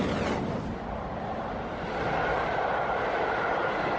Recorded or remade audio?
recorded